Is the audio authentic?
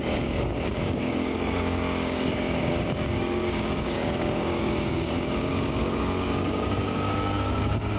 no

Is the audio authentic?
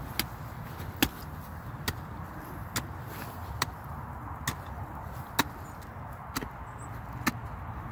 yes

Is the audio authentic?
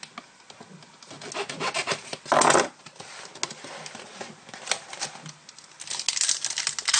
yes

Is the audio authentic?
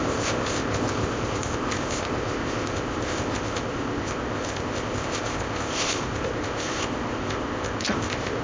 no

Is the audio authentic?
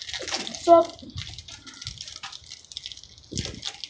yes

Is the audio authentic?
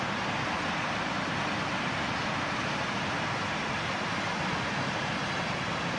yes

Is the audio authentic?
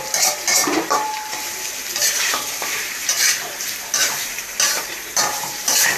no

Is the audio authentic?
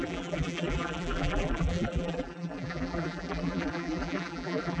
no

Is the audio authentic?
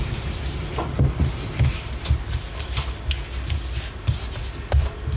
yes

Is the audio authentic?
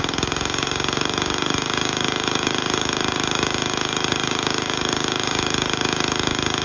no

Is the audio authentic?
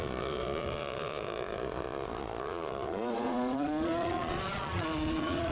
no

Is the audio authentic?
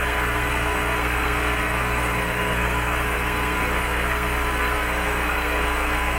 no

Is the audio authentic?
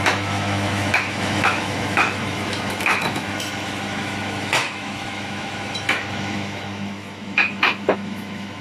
no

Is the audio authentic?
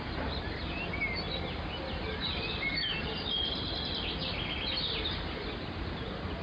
yes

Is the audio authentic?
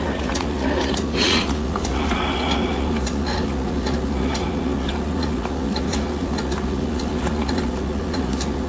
no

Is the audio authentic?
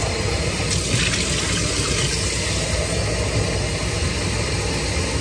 yes